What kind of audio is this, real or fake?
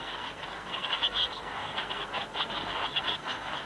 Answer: fake